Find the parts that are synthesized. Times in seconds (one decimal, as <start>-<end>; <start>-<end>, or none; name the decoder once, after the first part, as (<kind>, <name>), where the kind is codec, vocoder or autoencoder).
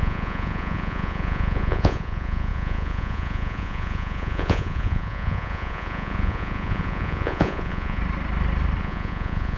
0.0-8.0 (vocoder, Vocos); 8.8-9.6